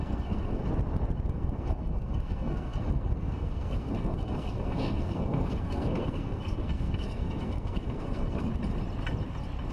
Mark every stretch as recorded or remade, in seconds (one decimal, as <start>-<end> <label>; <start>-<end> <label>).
0.0-0.6 remade; 0.6-1.3 recorded; 1.3-8.5 remade; 8.5-9.7 recorded